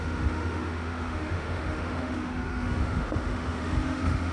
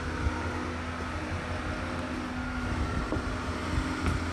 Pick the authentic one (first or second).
second